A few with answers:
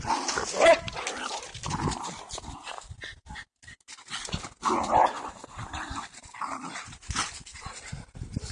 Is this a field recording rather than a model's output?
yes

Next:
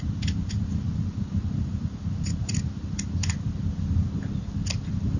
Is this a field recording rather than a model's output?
yes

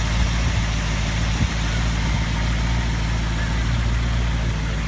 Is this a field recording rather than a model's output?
yes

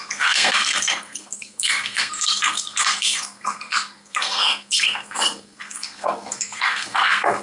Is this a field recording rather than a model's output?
no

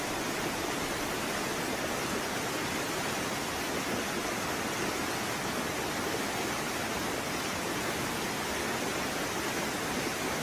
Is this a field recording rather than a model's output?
yes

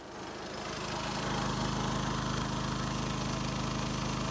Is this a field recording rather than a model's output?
yes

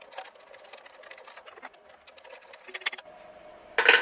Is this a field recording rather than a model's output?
yes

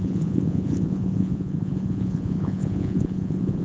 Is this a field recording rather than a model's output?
no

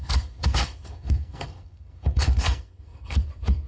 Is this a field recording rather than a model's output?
no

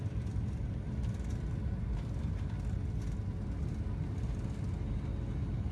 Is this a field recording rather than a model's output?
yes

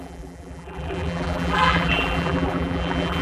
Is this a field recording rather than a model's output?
no